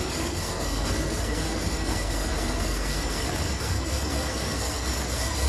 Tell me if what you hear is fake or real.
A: fake